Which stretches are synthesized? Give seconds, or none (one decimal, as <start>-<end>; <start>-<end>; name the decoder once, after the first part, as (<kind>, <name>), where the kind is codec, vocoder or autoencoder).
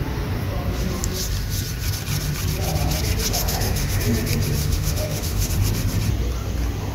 3.3-4.0 (autoencoder, DAC-VAE); 4.6-5.5